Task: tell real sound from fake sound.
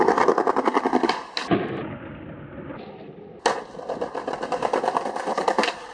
real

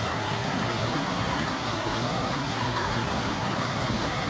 fake